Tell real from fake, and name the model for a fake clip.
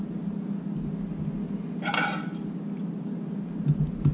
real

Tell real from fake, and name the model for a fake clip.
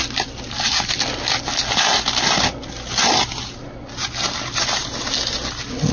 real